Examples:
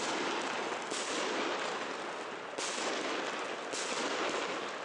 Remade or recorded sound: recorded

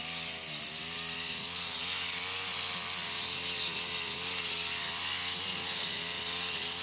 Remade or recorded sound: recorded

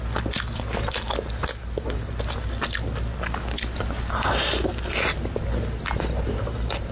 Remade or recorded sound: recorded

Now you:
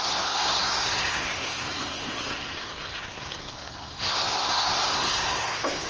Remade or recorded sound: remade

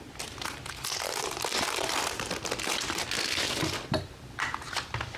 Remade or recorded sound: recorded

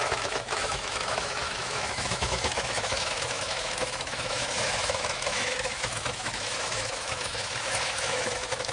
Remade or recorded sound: remade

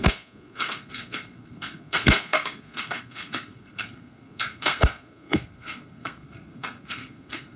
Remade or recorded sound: remade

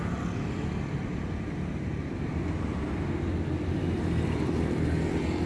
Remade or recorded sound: recorded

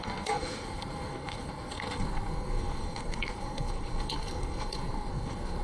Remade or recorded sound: remade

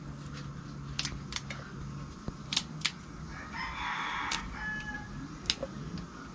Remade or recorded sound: recorded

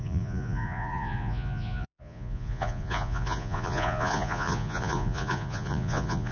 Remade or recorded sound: remade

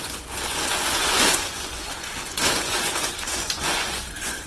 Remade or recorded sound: remade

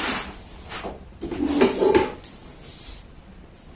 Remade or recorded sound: recorded